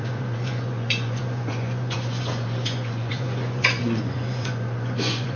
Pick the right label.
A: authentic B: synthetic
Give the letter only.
B